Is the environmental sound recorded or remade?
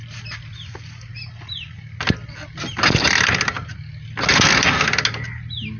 recorded